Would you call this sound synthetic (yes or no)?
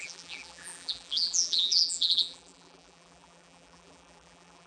yes